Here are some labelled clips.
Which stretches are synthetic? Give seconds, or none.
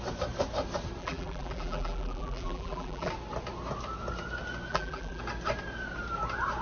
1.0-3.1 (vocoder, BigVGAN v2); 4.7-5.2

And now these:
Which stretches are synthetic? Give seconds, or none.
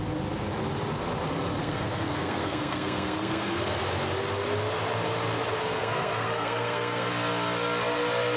1.6-3.8 (codec, SNAC); 5.6-7.1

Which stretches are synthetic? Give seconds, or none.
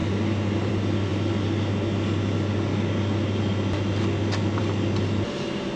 none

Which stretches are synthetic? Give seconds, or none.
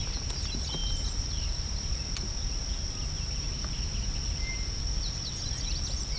none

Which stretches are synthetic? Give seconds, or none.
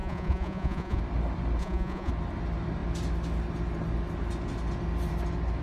0.0-1.0 (vocoder, Vocos); 1.6-2.1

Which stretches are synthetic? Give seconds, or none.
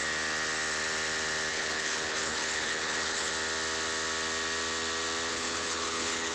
1.5-3.3 (codec, HILCodec); 5.3-6.3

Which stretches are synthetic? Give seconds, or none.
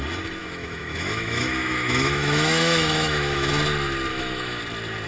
0.4-3.5 (autoencoder, DAC-VAE); 4.1-4.6